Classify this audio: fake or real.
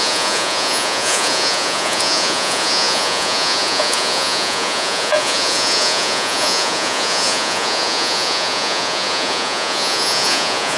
fake